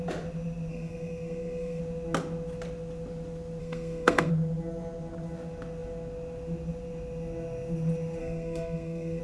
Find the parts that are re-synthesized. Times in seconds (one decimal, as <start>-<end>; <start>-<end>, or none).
0.7-1.8; 3.6-4.3; 8.2-9.2